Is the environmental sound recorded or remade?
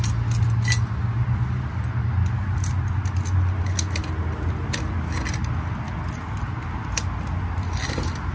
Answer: recorded